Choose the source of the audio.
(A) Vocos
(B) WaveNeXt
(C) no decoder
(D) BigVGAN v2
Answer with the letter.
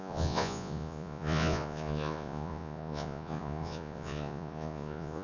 A